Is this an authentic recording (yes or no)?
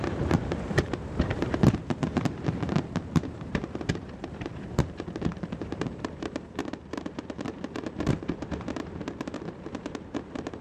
no